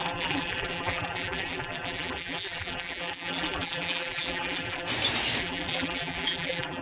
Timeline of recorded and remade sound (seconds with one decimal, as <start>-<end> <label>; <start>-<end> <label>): 0.0-4.9 remade; 4.9-5.4 recorded; 5.4-6.8 remade

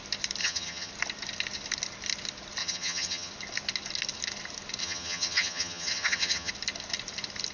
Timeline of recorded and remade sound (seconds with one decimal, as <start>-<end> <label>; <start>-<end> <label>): 0.0-0.4 recorded; 0.4-0.9 remade; 0.9-2.6 recorded; 2.6-3.3 remade; 3.3-4.8 recorded; 4.8-6.5 remade; 6.5-7.5 recorded

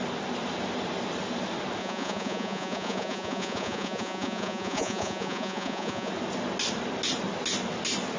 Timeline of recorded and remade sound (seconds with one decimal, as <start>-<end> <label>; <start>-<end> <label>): 0.0-1.8 recorded; 1.8-6.1 remade; 6.1-8.2 recorded

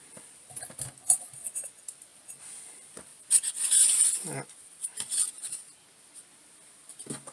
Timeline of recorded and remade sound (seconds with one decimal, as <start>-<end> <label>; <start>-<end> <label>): 0.0-7.3 recorded

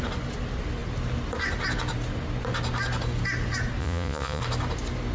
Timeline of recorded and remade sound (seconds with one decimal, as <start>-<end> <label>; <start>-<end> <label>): 0.0-3.8 recorded; 3.8-4.4 remade; 4.4-5.1 recorded